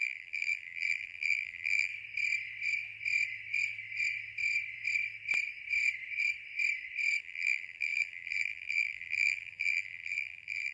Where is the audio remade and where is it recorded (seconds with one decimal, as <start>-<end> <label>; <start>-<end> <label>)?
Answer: 0.0-1.9 remade; 1.9-7.2 recorded; 7.2-10.7 remade